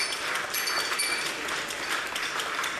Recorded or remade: remade